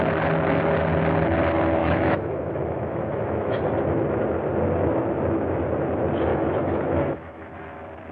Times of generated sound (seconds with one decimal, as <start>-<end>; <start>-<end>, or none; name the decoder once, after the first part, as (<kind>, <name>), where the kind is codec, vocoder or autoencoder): 1.8-3.6 (autoencoder, DAC-VAE); 6.3-7.5

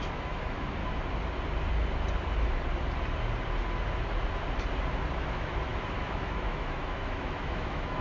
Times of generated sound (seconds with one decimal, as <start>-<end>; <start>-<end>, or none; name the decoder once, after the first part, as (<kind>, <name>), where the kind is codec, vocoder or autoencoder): 0.0-0.8 (autoencoder, DAC-VAE); 5.1-8.0

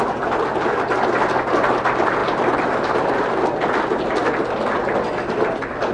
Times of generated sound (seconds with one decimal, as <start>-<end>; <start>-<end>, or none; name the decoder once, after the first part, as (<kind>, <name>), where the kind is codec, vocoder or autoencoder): none

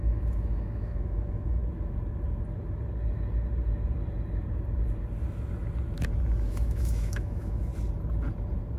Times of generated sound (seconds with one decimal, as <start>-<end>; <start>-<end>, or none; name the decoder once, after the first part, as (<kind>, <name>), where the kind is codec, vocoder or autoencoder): 0.0-1.6 (autoencoder, DAC-VAE); 6.5-7.7

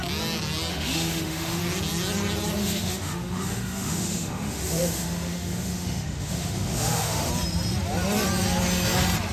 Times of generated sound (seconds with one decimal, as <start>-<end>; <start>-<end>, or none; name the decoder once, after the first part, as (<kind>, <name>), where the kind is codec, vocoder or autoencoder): 0.7-1.6 (autoencoder, DAC-VAE); 2.6-7.3

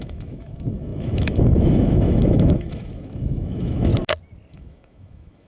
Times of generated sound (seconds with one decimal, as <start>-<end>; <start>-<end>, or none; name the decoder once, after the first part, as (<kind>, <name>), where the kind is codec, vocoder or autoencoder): 0.0-3.9 (autoencoder, DAC-VAE); 4.5-5.5

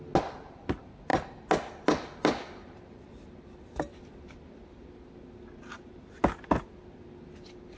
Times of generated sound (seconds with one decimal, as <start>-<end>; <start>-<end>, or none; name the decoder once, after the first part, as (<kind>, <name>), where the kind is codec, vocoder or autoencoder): none

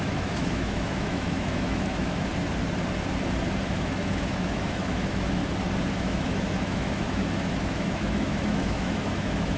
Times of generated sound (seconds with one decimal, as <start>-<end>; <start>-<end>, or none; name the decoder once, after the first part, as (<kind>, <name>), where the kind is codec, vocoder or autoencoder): 0.0-2.3 (autoencoder, DAC-VAE); 3.7-5.4; 5.9-9.6